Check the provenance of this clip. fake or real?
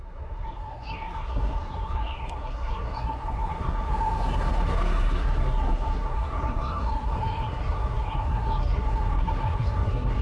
fake